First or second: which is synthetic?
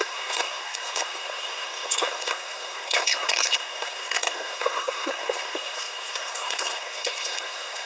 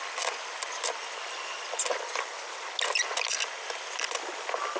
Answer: first